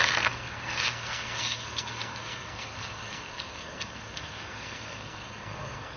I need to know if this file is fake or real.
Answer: fake